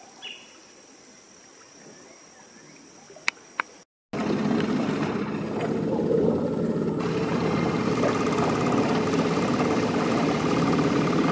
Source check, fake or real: real